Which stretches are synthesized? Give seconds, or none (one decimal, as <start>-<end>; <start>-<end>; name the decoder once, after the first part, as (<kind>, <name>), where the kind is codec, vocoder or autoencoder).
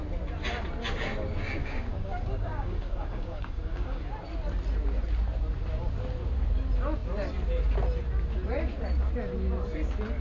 1.6-4.1 (codec, DAC)